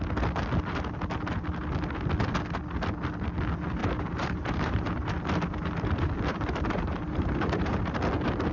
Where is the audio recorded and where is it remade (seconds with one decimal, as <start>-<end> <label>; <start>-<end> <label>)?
0.0-3.8 recorded; 3.8-5.1 remade; 5.1-6.3 recorded; 6.3-7.8 remade; 7.8-8.5 recorded